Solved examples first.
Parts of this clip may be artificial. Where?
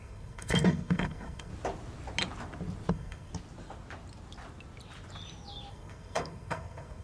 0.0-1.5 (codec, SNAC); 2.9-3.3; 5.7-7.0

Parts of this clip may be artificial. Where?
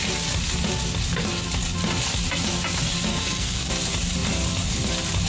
3.1-3.7 (codec, SNAC)